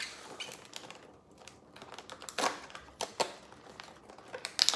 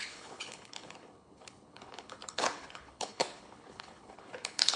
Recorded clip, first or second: first